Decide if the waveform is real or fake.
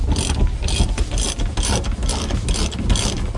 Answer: real